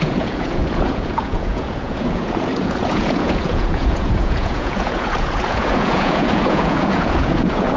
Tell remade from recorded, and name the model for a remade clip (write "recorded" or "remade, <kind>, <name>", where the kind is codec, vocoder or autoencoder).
remade, vocoder, Vocos